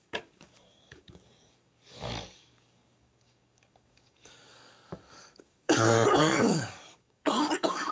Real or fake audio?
fake